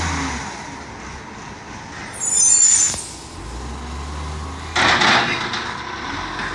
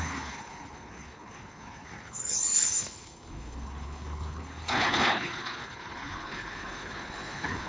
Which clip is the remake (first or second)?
second